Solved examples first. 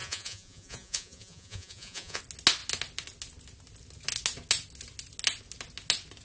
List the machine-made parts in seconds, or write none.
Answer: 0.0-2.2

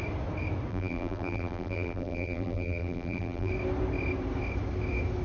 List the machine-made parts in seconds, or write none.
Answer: 0.7-3.5

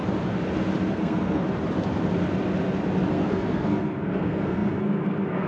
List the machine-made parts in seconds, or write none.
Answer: 0.9-1.4; 3.1-5.5

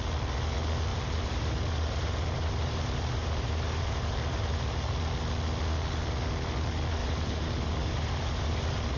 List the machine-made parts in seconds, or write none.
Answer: 0.9-4.9; 7.0-8.6

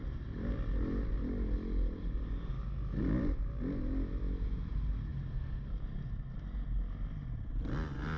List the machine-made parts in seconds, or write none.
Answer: none

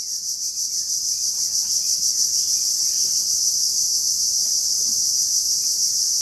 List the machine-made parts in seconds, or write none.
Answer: 3.6-4.1